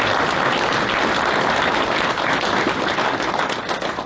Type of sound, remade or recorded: recorded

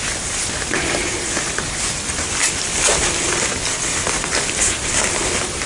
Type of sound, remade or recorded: remade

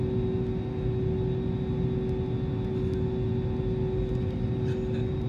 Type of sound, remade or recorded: recorded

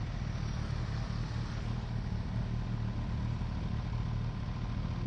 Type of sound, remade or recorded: recorded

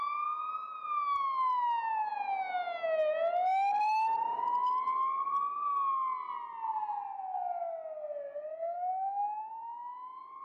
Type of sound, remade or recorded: recorded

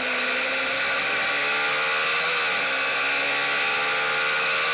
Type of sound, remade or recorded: recorded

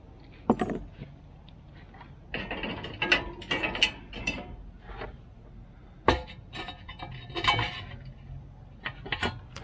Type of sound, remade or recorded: recorded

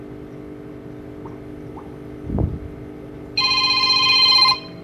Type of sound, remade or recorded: recorded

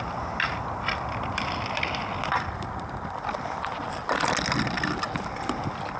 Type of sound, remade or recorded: recorded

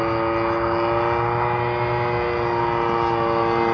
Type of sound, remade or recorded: recorded